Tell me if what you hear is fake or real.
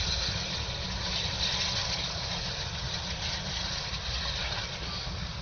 real